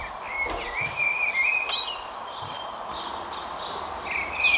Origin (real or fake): fake